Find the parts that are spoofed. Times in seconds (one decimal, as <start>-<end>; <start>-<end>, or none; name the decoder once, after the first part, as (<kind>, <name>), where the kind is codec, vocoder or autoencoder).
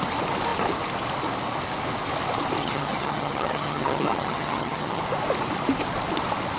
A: 2.6-5.0 (vocoder, HiFi-GAN)